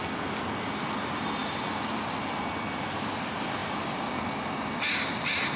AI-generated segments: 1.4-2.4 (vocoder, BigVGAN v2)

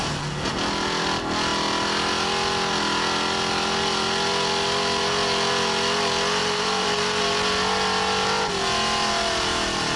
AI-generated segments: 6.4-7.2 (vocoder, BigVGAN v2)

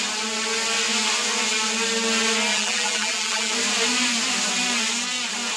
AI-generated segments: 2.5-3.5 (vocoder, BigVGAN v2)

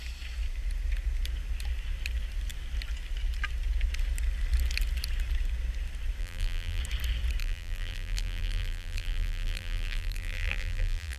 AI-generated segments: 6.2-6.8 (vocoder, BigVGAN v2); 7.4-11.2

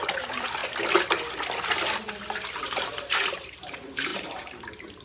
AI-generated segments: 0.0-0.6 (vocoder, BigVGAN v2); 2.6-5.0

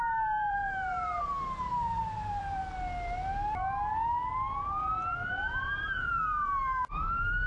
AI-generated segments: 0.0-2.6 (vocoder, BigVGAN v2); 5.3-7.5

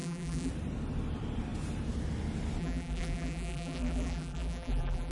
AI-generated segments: 0.0-0.5 (vocoder, BigVGAN v2); 2.6-5.1